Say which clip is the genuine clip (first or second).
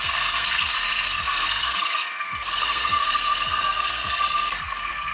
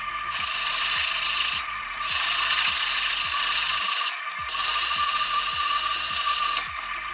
second